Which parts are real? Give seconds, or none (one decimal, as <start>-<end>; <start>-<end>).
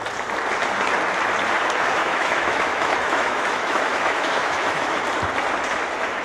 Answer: 0.0-2.0; 5.0-6.2